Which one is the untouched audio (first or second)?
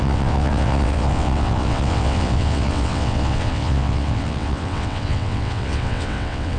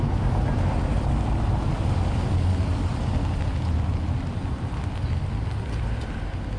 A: second